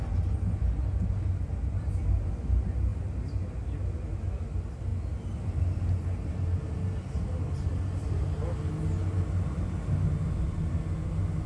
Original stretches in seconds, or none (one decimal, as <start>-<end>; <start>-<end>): 0.0-11.5